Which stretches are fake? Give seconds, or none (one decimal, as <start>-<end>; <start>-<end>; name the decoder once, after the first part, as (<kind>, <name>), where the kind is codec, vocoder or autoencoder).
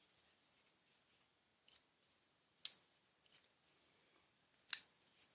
none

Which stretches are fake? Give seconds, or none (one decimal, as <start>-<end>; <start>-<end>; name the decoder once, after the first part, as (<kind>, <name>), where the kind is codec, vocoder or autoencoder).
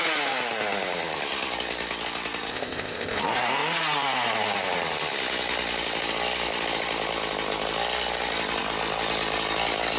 2.5-3.2 (codec, ZipCodec)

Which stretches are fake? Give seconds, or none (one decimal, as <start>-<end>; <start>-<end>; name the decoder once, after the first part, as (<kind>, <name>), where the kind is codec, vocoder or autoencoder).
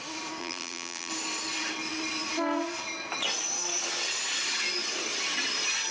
0.4-1.1 (vocoder, BigVGAN v2)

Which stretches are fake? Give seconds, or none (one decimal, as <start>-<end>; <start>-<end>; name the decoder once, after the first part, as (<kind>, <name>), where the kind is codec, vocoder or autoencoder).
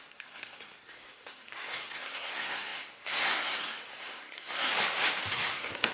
0.0-4.7 (codec, SNAC); 5.3-5.9